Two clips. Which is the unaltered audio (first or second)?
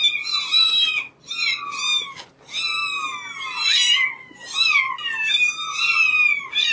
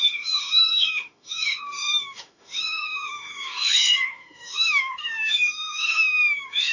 first